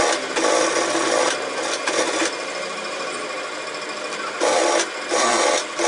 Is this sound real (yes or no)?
yes